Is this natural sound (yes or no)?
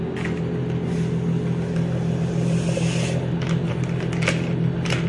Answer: yes